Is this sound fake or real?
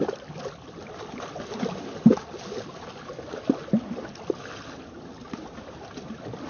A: real